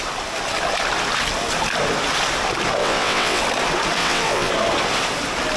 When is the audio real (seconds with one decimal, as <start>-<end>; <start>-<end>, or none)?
0.0-2.8; 3.4-4.0; 4.5-5.6